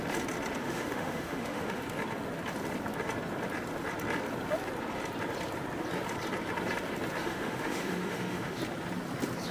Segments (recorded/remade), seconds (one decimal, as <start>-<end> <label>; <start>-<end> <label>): 0.0-0.6 recorded; 0.6-1.8 remade; 1.8-7.2 recorded; 7.2-8.6 remade; 8.6-9.5 recorded